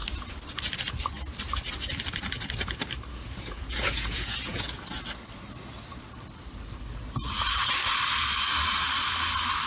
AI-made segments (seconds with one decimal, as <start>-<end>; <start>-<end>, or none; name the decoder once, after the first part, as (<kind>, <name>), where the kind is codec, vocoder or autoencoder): 3.1-4.8 (vocoder, Vocos)